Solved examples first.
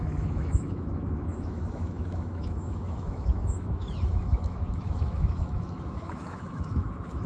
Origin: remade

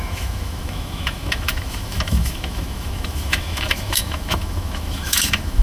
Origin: remade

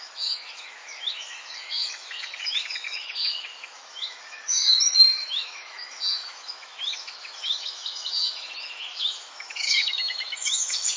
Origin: remade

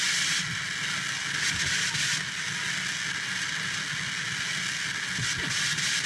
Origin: recorded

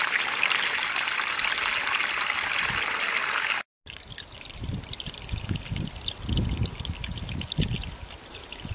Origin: recorded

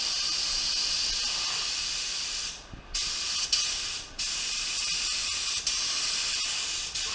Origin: recorded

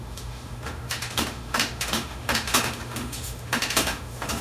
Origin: remade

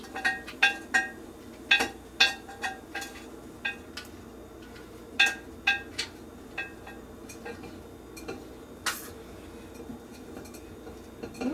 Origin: recorded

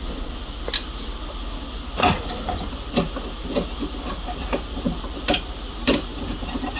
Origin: recorded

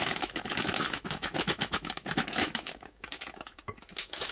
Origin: remade